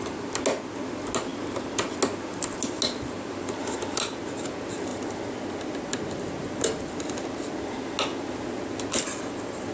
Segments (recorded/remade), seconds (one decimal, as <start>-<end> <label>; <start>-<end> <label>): 0.0-9.7 recorded